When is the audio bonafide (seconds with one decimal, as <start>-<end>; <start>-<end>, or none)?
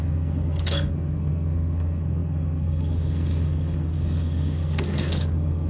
none